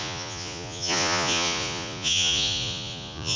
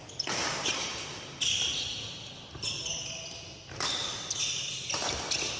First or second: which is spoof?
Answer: first